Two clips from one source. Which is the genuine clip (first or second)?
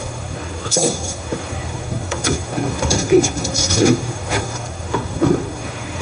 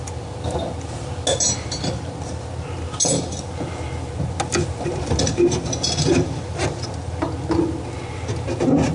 second